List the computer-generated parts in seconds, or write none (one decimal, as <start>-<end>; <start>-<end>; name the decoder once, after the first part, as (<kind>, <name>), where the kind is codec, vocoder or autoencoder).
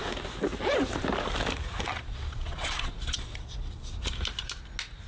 1.9-3.9 (vocoder, Vocos)